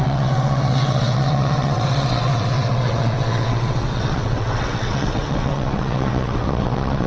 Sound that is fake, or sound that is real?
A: fake